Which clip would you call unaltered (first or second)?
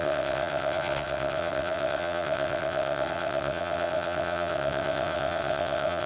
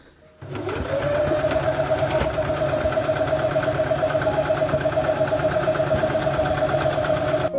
second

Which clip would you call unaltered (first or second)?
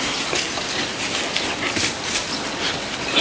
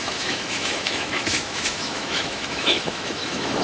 first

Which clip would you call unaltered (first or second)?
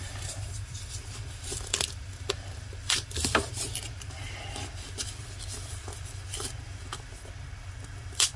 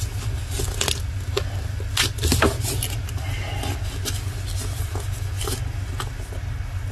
second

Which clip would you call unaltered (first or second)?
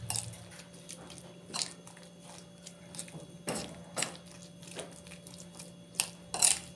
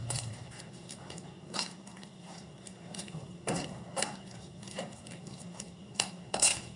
first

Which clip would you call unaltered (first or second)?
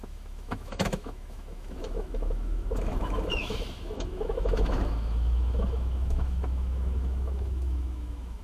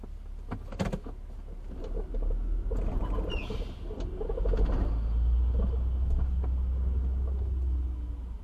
second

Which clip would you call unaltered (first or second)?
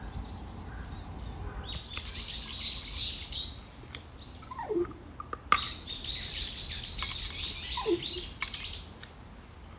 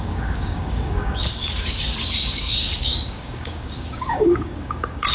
first